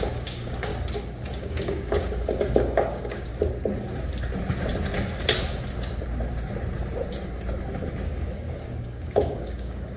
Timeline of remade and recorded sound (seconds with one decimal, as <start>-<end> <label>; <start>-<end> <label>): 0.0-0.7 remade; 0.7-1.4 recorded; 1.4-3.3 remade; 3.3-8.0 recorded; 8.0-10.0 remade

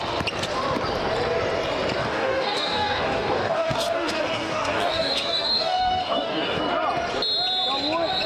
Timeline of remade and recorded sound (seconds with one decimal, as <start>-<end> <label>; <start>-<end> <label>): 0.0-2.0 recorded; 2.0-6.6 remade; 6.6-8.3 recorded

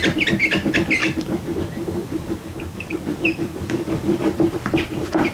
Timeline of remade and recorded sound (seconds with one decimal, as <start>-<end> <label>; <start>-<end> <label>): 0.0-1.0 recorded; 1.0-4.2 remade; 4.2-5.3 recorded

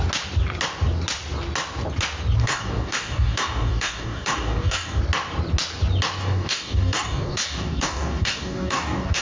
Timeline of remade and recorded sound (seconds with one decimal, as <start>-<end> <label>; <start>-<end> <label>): 0.0-2.4 recorded; 2.4-5.0 remade; 5.0-6.2 recorded; 6.2-9.2 remade

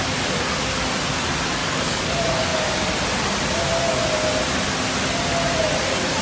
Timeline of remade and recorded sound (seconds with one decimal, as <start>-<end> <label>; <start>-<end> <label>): 0.0-1.6 recorded; 1.6-2.1 remade; 2.1-6.2 recorded

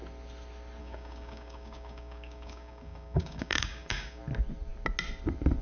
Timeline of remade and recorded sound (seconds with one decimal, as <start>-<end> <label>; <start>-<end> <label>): 0.0-0.8 recorded; 0.8-4.2 remade; 4.2-5.6 recorded